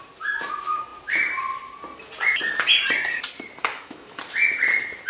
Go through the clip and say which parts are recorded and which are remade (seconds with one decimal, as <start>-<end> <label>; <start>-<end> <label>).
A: 0.0-3.6 recorded; 3.6-4.2 remade; 4.2-5.1 recorded